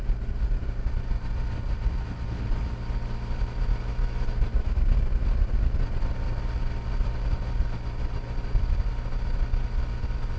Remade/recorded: recorded